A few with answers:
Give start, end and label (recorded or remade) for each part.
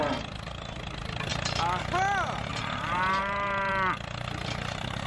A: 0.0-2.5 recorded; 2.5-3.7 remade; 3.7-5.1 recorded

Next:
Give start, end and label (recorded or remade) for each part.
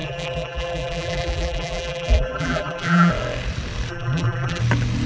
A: 0.0-3.1 remade; 3.1-3.9 recorded; 3.9-4.6 remade; 4.6-5.1 recorded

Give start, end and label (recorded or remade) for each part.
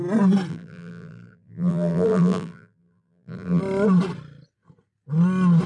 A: 0.0-0.5 recorded; 0.5-3.6 remade; 3.6-5.7 recorded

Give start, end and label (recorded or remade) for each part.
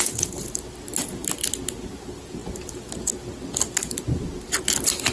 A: 0.0-5.1 recorded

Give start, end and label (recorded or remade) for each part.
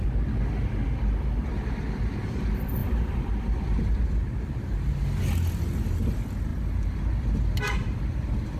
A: 0.0-2.8 recorded; 2.8-3.3 remade; 3.3-8.6 recorded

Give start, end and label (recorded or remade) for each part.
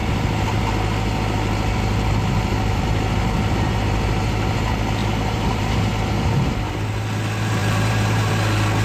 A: 0.0-5.0 recorded; 5.0-5.7 remade; 5.7-7.6 recorded; 7.6-8.3 remade; 8.3-8.8 recorded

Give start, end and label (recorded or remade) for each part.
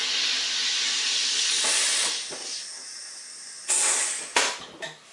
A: 0.0-5.1 recorded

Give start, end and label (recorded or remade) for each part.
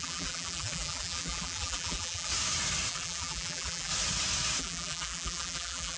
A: 0.0-2.3 remade; 2.3-2.9 recorded; 2.9-3.9 remade; 3.9-4.6 recorded; 4.6-6.0 remade